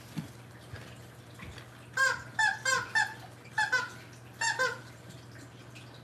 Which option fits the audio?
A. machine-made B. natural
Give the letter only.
B